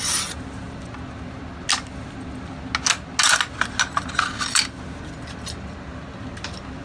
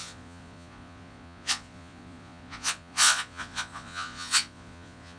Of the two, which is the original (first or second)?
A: first